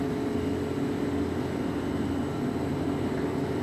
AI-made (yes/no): no